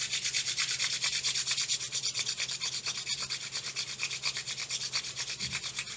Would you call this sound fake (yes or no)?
no